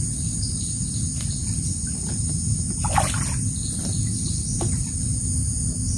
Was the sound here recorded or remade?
recorded